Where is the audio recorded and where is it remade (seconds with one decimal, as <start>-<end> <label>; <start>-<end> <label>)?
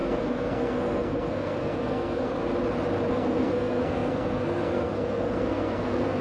0.0-2.4 remade; 2.4-3.1 recorded; 3.1-6.2 remade